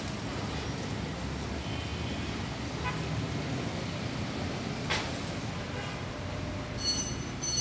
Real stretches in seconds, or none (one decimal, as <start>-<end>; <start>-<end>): 0.0-7.6